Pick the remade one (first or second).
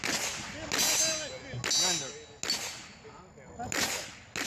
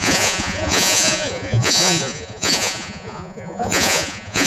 second